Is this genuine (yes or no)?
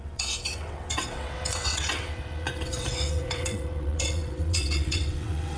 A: no